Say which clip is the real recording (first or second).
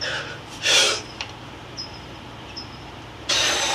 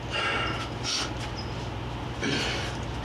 second